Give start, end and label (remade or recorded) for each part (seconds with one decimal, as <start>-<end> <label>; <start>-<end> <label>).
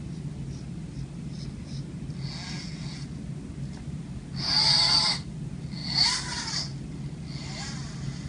0.0-8.3 recorded